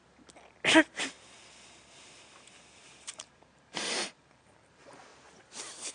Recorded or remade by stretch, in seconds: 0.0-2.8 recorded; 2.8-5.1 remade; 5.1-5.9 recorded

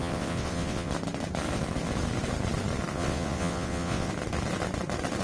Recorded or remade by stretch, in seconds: 0.0-0.9 remade; 0.9-2.9 recorded; 2.9-4.1 remade; 4.1-5.2 recorded